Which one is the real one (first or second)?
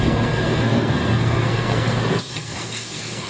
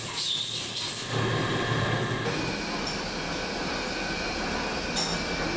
second